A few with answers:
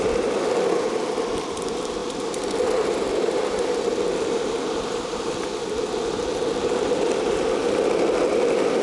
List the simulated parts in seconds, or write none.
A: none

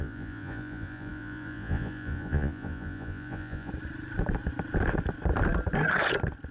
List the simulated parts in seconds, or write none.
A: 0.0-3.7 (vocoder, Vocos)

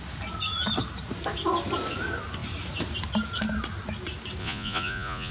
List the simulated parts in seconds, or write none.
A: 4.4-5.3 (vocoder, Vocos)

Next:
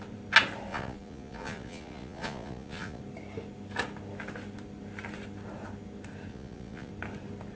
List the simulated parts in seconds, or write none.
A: 0.7-3.0 (vocoder, Vocos); 6.3-6.9